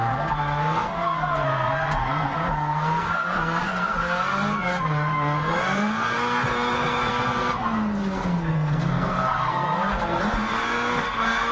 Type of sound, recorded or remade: remade